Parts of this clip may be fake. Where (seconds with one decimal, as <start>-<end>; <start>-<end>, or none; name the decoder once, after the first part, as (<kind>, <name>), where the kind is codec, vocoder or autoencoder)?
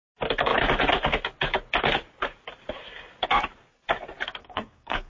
4.4-5.1 (codec, SNAC)